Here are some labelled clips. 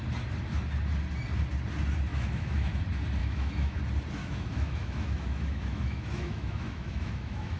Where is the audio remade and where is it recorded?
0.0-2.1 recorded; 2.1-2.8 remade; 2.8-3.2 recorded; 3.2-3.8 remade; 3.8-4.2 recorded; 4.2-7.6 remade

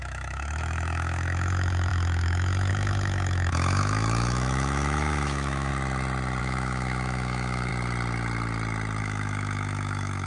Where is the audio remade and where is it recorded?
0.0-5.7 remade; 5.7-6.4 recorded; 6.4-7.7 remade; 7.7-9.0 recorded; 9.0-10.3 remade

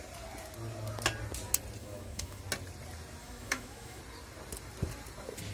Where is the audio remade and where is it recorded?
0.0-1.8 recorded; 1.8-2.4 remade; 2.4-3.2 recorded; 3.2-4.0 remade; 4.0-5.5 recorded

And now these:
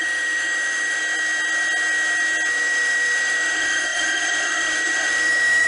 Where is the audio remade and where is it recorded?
0.0-1.0 remade; 1.0-2.5 recorded; 2.5-5.7 remade

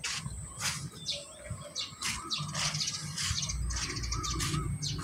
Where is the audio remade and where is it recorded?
0.0-5.0 recorded

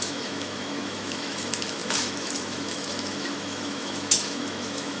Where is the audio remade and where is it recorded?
0.0-5.0 remade

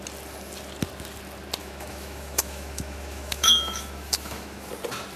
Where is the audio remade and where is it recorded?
0.0-1.6 recorded; 1.6-4.7 remade; 4.7-5.2 recorded

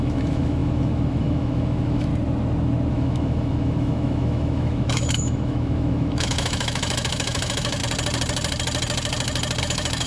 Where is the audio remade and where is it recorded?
0.0-2.1 remade; 2.1-2.9 recorded; 2.9-7.8 remade; 7.8-9.6 recorded; 9.6-10.1 remade